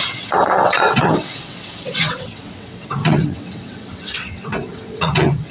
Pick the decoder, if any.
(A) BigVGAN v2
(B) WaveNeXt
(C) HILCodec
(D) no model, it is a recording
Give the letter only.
B